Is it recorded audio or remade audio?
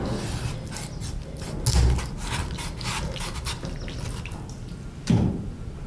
recorded